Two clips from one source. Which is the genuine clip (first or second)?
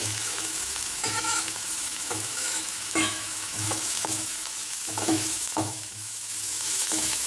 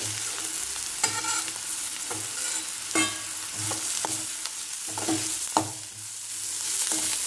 second